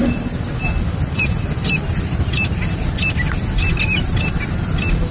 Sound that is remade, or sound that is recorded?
recorded